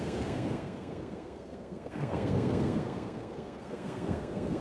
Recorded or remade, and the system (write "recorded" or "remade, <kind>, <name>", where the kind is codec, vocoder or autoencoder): remade, codec, SNAC